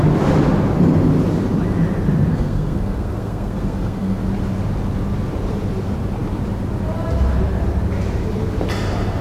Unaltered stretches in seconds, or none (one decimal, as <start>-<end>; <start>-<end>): 0.0-2.3; 4.2-9.2